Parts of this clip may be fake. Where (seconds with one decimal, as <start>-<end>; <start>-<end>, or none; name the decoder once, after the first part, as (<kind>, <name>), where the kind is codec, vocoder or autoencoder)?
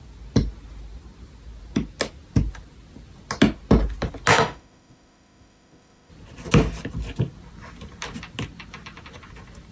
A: 4.3-6.1 (autoencoder, DAC-VAE)